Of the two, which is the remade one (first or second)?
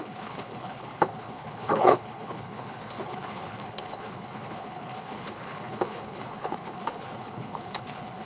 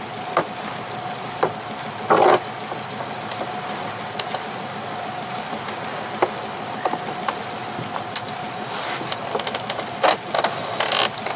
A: first